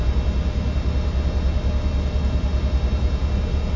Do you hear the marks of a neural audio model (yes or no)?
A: no